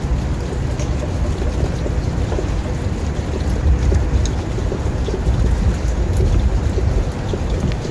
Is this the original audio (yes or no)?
yes